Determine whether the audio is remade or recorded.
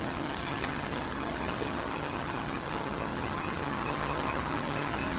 remade